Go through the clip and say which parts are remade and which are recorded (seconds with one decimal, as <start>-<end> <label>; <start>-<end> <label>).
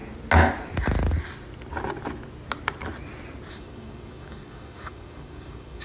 0.0-3.5 recorded; 3.5-5.8 remade